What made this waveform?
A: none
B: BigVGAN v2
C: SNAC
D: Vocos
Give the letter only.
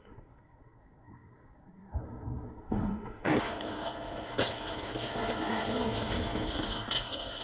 C